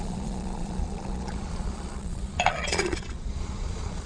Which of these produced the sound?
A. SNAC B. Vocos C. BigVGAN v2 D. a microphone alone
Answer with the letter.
B